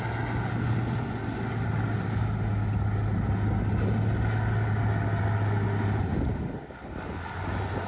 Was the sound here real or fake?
real